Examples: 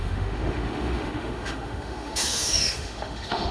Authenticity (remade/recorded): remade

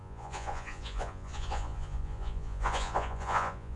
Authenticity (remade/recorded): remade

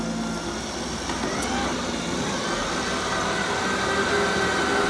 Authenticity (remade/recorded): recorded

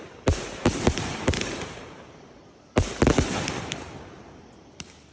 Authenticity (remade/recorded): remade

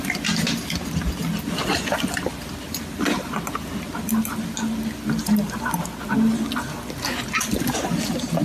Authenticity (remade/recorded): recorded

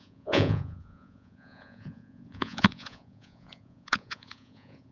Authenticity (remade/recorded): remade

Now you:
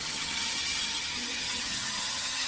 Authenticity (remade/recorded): remade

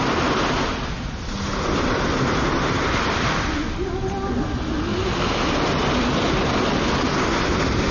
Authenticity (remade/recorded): recorded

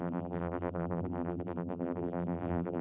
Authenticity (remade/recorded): remade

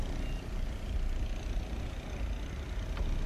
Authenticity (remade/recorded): recorded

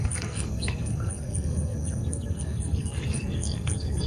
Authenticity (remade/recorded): remade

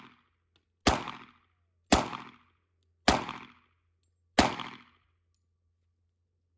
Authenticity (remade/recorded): recorded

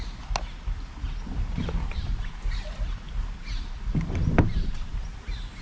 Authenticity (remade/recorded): recorded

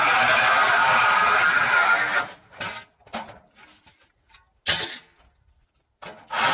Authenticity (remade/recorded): recorded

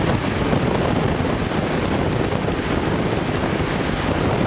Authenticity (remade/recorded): recorded